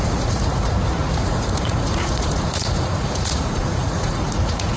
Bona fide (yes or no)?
no